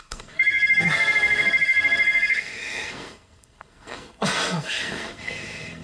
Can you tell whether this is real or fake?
fake